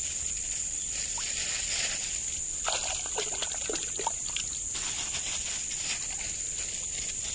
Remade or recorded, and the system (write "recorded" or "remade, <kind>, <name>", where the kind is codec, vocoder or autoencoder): recorded